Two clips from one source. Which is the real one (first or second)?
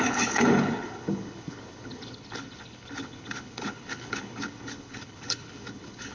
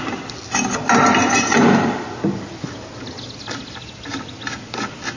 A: second